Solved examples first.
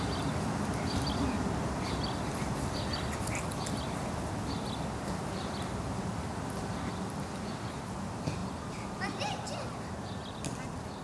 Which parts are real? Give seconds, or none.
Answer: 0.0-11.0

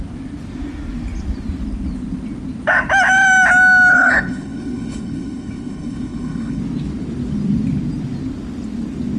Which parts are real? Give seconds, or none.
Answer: 0.0-3.9; 6.6-9.2

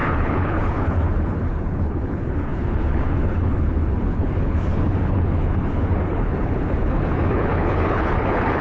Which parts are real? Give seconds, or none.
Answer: none

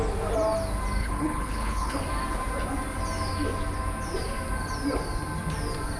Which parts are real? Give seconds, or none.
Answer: 0.0-1.0; 2.0-6.0

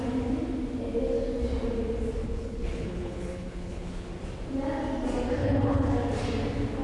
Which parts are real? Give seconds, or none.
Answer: 0.0-2.2; 4.1-5.4; 5.9-6.8

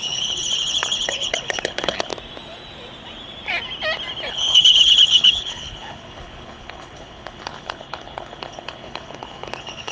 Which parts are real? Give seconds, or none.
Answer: 2.1-4.3

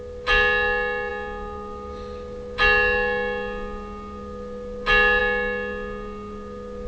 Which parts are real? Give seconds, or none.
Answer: 0.0-6.9